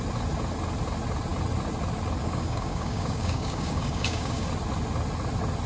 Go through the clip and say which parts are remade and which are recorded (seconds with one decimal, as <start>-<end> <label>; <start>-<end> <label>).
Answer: 0.0-2.2 recorded; 2.2-4.5 remade; 4.5-5.7 recorded